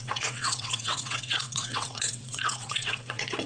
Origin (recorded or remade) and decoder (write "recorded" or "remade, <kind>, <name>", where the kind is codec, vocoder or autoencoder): remade, vocoder, WaveNeXt